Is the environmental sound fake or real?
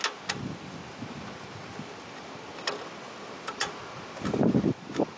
real